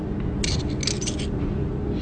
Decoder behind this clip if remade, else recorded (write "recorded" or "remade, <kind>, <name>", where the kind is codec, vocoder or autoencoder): recorded